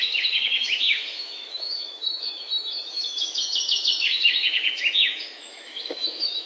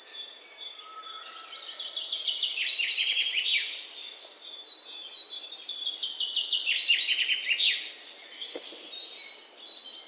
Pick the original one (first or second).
second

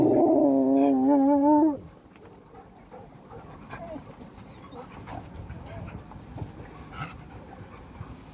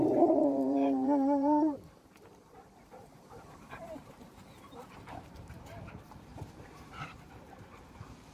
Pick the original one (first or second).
first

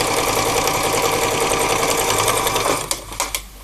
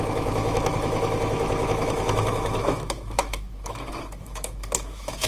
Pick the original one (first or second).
first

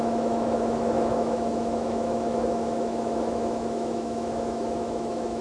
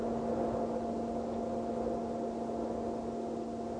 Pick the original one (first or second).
second